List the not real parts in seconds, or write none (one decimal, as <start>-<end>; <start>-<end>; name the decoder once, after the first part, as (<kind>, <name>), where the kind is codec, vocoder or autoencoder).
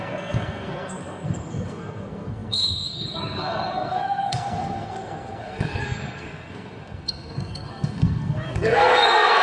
0.0-9.4 (codec, SNAC)